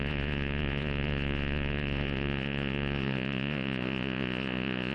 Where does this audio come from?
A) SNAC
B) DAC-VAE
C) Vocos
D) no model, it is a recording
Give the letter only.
C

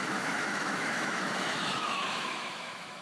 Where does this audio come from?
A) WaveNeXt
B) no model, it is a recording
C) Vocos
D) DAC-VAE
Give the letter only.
D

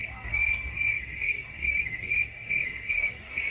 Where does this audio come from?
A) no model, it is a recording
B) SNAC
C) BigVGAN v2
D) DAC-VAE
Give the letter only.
B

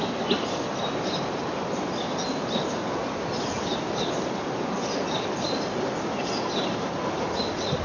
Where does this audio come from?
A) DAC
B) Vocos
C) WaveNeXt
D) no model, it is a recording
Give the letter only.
D